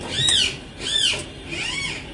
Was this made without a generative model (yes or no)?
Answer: yes